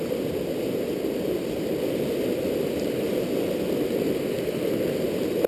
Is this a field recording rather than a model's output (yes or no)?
yes